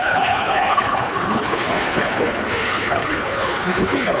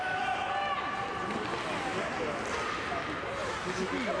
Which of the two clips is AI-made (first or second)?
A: first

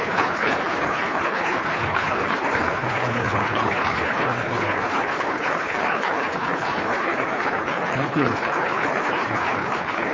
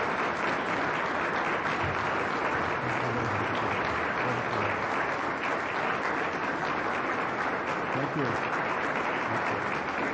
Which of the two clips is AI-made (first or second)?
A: first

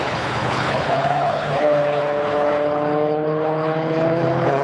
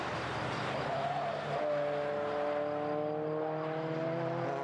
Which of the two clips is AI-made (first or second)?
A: first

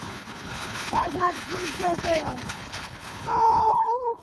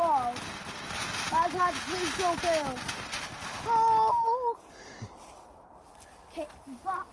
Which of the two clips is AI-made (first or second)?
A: first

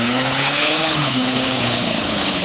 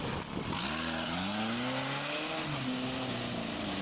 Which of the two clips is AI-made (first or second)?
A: first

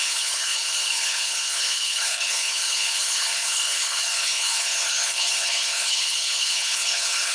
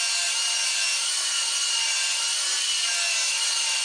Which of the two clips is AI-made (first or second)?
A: first